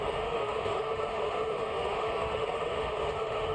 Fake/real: fake